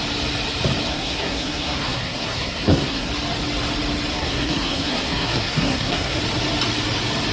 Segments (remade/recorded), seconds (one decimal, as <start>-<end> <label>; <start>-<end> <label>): 0.0-0.9 recorded; 0.9-3.1 remade; 3.1-4.1 recorded; 4.1-6.2 remade; 6.2-7.3 recorded